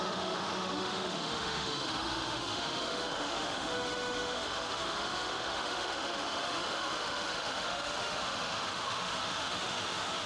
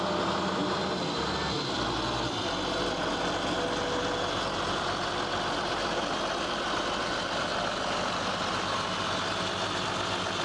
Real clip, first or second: second